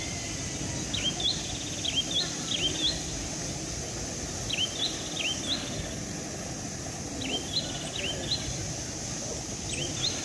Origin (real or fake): real